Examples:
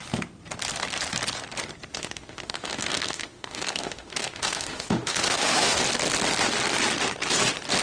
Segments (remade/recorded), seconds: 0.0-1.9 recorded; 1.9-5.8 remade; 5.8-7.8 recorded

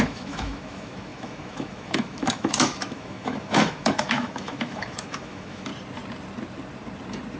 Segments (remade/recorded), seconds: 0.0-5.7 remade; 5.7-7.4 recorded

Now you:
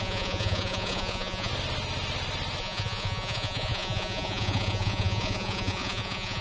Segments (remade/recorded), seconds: 0.0-1.5 remade; 1.5-2.6 recorded; 2.6-6.4 remade

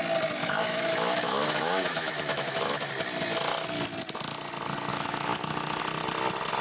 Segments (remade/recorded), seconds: 0.0-0.4 recorded; 0.4-2.9 remade; 2.9-4.9 recorded; 4.9-5.8 remade; 5.8-6.6 recorded